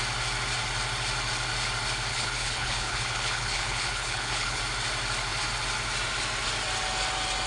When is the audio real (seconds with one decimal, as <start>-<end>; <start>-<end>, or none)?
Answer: 0.0-2.1; 4.6-7.5